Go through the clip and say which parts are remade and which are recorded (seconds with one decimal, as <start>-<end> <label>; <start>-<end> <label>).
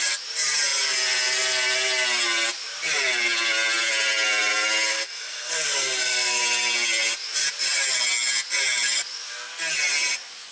0.0-4.9 recorded; 4.9-6.4 remade; 6.4-10.5 recorded